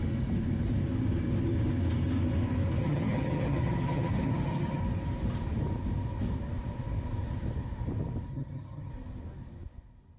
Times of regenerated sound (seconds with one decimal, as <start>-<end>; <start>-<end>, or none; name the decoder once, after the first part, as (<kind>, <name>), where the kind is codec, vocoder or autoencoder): 2.8-4.8 (vocoder, HiFi-GAN); 8.3-8.9